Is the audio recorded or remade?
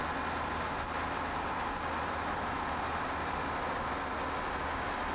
recorded